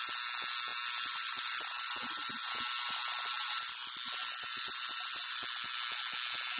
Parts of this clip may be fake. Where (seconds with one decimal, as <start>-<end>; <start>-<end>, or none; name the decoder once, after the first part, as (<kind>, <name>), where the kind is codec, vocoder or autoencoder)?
none